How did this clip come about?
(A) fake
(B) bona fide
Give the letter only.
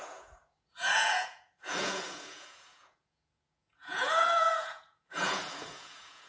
A